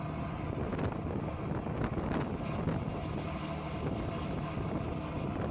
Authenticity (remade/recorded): recorded